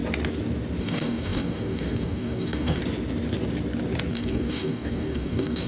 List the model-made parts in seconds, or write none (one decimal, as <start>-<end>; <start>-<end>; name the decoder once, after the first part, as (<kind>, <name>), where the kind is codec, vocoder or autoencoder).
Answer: 0.8-2.8 (codec, DAC); 4.1-5.7